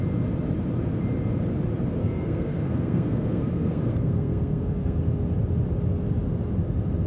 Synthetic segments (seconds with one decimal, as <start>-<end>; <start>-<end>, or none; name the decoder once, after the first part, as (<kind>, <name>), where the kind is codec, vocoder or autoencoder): 2.0-5.0 (codec, SNAC)